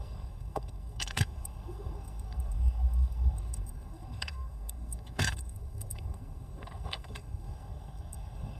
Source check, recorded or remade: remade